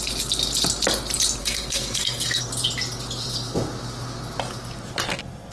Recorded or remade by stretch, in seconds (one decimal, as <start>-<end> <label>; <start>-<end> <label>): 0.0-1.4 recorded; 1.4-2.4 remade; 2.4-5.5 recorded